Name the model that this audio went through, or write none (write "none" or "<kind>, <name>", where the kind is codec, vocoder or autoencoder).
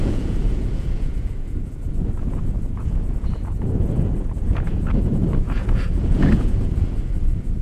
vocoder, Vocos